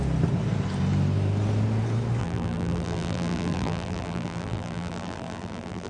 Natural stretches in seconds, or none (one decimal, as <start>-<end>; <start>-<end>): 0.0-2.2